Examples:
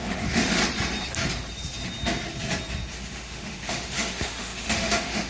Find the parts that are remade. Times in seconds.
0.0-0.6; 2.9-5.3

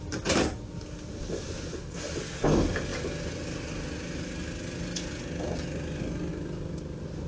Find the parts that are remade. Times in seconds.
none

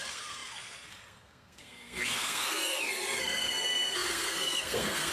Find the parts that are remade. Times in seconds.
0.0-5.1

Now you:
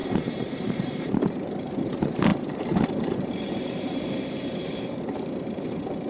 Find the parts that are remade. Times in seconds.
0.0-6.1

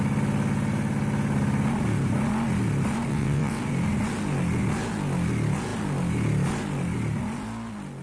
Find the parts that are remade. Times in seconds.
3.1-3.6

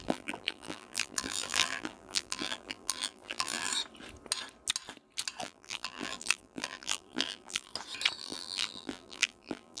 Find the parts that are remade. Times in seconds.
0.0-3.7; 5.4-7.7; 8.2-9.8